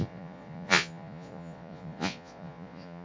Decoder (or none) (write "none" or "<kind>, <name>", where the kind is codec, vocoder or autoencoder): vocoder, Vocos